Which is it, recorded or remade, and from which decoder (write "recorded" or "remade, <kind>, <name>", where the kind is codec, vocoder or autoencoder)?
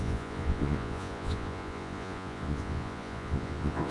remade, vocoder, Vocos